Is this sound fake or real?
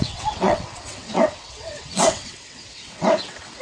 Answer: fake